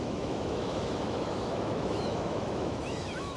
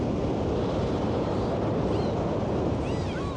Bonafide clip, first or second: second